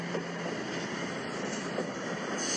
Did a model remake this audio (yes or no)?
no